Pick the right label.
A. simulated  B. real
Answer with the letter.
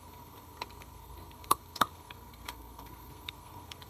A